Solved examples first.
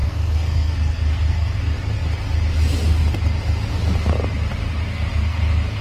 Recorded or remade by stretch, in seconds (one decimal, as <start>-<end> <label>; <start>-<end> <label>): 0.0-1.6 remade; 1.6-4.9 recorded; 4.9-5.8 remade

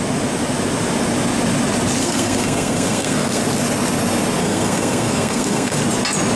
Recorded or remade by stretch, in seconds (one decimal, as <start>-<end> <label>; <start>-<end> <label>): 0.0-2.0 recorded; 2.0-3.4 remade; 3.4-4.4 recorded; 4.4-5.8 remade; 5.8-6.4 recorded

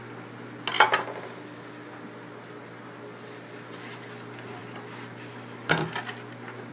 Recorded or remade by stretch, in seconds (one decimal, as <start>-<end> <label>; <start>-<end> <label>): 0.0-6.7 recorded

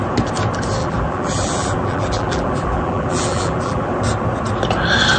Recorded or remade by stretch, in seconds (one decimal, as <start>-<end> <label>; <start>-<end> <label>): 0.0-0.8 recorded; 0.8-3.9 remade; 3.9-5.2 recorded

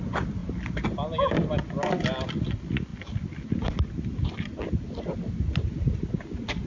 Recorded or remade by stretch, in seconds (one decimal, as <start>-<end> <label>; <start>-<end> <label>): 0.0-6.7 recorded